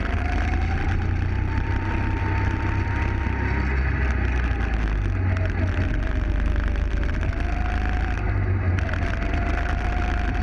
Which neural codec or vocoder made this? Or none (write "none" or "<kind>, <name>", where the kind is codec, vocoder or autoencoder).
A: none